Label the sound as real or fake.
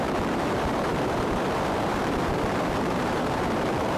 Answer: fake